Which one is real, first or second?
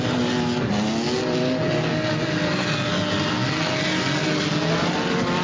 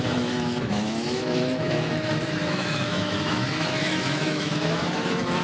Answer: first